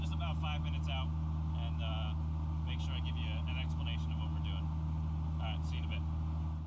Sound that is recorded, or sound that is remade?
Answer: recorded